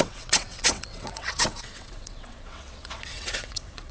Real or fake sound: fake